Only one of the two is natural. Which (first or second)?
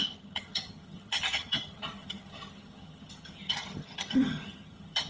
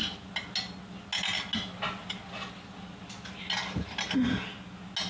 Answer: second